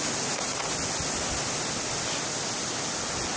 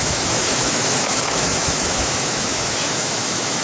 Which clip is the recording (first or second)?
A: first